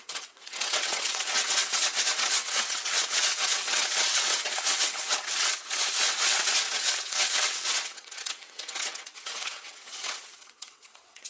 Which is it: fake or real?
fake